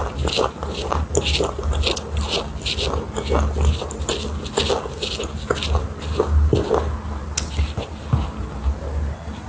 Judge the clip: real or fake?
real